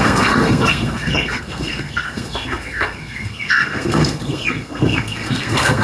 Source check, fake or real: fake